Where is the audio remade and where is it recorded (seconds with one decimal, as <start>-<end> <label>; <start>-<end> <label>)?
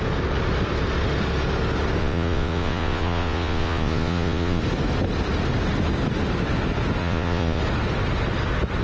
0.0-2.0 recorded; 2.0-4.6 remade; 4.6-7.0 recorded; 7.0-7.6 remade; 7.6-8.8 recorded